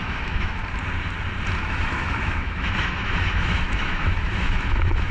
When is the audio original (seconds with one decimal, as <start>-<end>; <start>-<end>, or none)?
0.6-1.6